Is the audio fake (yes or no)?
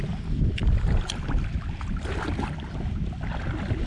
no